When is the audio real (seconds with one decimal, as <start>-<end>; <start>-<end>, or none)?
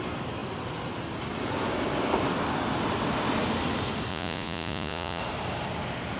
0.0-4.1; 5.2-6.2